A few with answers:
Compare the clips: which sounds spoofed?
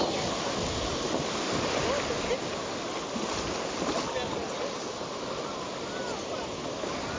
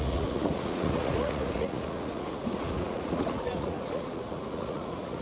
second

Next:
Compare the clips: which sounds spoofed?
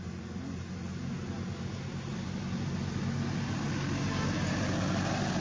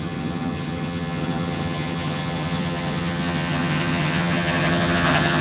second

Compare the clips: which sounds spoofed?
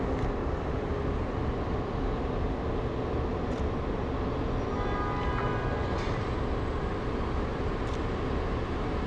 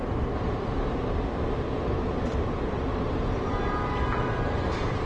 second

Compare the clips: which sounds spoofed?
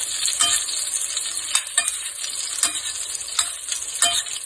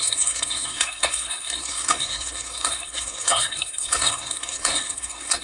second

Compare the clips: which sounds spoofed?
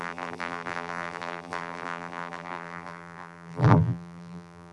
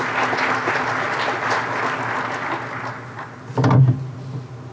first